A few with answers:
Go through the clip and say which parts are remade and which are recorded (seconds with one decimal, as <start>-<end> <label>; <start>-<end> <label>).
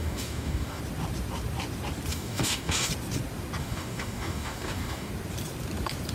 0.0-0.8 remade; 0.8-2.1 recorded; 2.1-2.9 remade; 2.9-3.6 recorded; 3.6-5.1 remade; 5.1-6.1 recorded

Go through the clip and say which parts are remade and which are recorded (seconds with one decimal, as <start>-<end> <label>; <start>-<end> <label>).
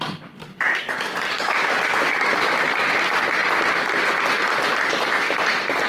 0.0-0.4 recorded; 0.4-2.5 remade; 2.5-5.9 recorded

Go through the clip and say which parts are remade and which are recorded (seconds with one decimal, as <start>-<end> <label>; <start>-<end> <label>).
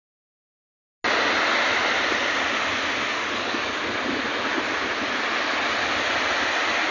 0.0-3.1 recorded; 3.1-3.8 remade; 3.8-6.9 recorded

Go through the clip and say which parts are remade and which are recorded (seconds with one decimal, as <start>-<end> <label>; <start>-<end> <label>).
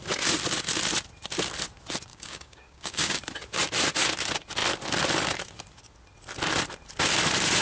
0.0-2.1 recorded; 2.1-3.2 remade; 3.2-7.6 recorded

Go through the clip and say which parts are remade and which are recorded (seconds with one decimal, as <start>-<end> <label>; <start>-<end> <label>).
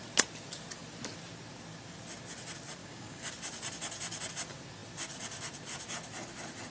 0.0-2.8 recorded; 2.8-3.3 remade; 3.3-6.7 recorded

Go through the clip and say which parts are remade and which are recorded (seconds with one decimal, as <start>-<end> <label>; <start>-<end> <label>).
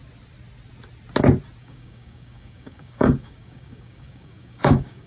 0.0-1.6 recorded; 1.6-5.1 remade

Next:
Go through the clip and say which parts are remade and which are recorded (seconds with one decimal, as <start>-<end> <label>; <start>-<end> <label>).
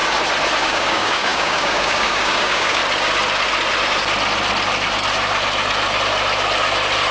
0.0-0.6 recorded; 0.6-2.8 remade; 2.8-7.1 recorded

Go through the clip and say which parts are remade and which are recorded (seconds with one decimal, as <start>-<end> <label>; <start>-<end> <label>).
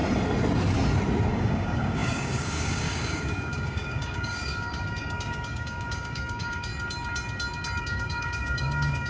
0.0-1.3 recorded; 1.3-6.7 remade; 6.7-7.8 recorded; 7.8-9.1 remade